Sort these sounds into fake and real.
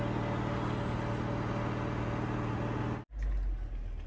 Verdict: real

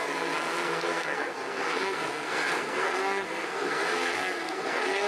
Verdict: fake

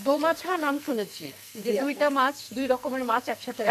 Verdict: fake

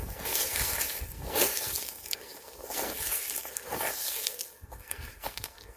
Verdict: fake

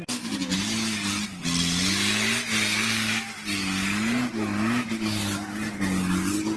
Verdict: real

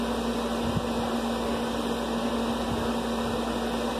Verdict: real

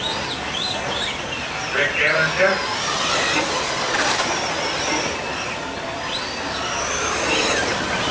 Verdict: real